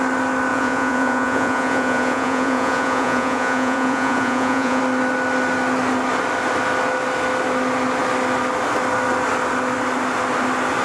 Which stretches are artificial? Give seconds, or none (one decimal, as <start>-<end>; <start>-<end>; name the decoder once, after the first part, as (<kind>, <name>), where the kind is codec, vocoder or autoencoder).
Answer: 0.5-4.8 (vocoder, Vocos)